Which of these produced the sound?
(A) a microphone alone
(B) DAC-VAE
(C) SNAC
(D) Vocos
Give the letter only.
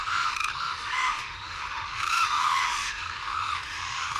B